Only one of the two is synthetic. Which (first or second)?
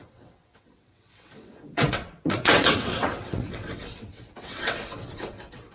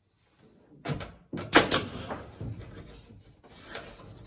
first